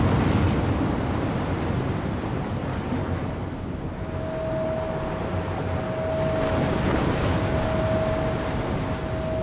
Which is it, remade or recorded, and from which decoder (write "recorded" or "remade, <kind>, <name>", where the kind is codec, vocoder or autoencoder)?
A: recorded